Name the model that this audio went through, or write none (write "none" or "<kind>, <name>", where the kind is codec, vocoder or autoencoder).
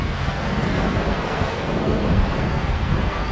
codec, SNAC